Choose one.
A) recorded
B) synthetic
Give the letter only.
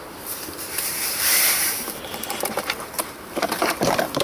B